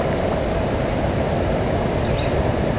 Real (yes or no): yes